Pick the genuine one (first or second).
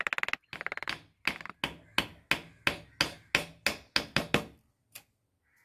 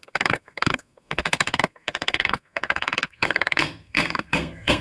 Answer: first